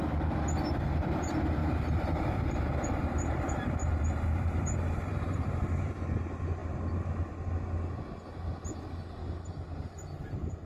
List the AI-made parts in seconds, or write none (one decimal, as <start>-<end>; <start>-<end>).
1.6-5.9; 9.2-10.7